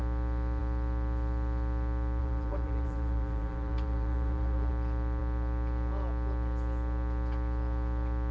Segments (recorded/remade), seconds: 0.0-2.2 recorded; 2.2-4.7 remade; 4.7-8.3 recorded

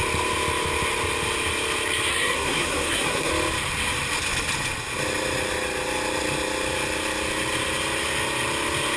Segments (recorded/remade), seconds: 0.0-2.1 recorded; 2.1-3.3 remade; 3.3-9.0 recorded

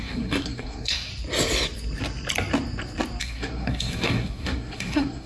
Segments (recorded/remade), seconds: 0.0-1.1 remade; 1.1-3.2 recorded; 3.2-5.3 remade